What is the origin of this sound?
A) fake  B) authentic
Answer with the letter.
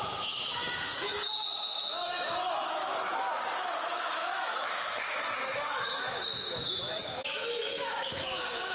A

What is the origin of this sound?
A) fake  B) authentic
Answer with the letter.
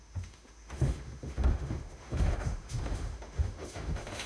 A